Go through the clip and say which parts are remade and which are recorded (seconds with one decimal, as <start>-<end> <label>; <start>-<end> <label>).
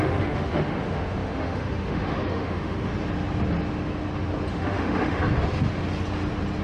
0.0-2.9 remade; 2.9-4.5 recorded; 4.5-5.2 remade; 5.2-6.6 recorded